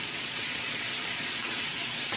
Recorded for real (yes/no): no